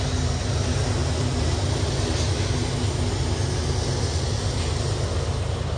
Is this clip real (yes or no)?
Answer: yes